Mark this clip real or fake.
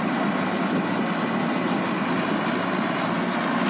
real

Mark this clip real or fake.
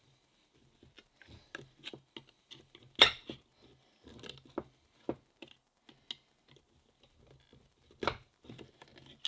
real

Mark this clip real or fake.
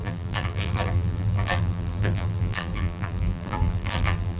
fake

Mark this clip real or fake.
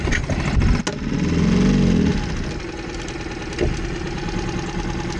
real